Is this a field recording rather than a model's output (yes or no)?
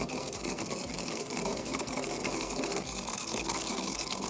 no